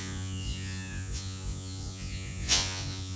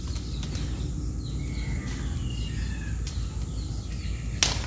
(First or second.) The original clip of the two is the second